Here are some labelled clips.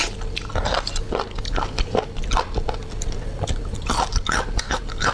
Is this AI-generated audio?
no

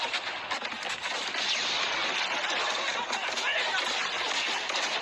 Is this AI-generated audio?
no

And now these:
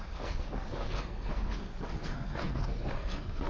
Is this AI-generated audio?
yes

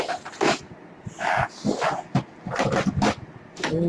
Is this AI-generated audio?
no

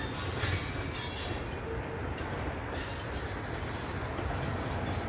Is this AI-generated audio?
no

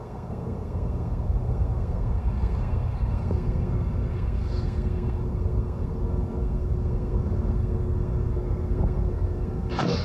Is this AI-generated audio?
yes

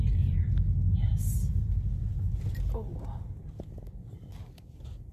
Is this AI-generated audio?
no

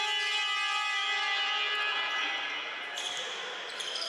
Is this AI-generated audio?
no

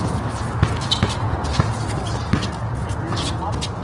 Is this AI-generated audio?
no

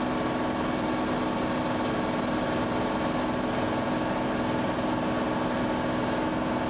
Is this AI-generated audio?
no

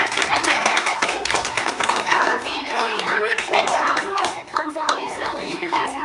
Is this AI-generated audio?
yes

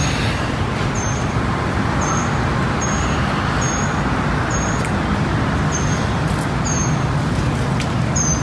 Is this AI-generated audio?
no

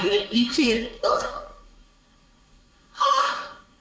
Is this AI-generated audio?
yes